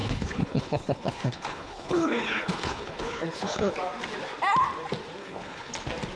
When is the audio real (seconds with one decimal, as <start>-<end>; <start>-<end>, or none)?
3.7-5.2; 5.7-6.2